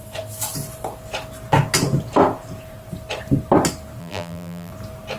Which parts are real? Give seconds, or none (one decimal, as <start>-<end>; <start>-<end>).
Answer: 0.0-4.0; 4.7-5.2